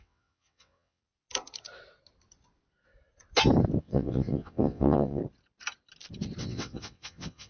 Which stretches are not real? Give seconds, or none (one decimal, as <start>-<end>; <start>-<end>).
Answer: 0.0-1.0; 3.8-5.2; 6.4-7.5